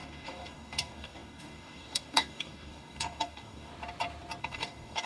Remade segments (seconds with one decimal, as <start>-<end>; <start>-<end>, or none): 0.0-3.7; 4.4-5.1